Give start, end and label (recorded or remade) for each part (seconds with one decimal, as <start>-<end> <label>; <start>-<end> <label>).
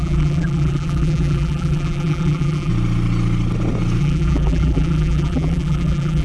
0.0-2.7 remade; 2.7-4.0 recorded; 4.0-6.2 remade